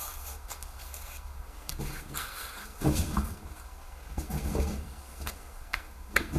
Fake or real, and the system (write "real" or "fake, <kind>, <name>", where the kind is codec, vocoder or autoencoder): fake, codec, SNAC